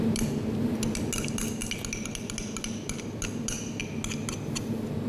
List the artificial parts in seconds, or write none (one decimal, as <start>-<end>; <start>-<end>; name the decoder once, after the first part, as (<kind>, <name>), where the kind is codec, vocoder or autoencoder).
none